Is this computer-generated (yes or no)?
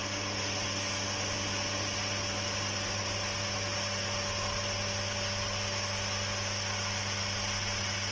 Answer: no